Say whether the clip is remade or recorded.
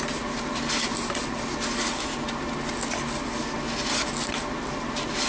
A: recorded